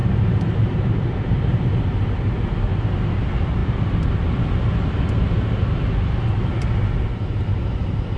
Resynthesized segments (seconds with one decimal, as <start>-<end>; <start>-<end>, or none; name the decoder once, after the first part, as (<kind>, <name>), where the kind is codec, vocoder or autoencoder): 0.0-2.3 (vocoder, BigVGAN v2)